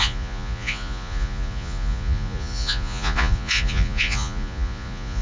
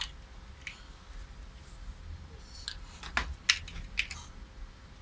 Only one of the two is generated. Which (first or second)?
first